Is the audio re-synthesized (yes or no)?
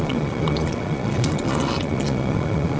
yes